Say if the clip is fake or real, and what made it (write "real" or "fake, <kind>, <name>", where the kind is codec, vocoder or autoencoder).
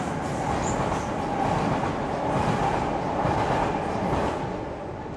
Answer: real